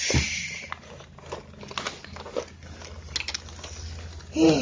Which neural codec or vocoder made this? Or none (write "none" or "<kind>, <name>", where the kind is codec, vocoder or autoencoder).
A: none